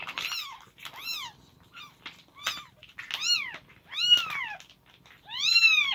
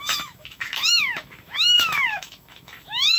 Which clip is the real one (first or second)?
first